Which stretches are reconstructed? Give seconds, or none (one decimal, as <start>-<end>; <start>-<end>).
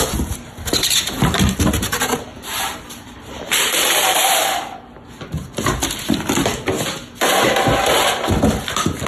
2.3-4.4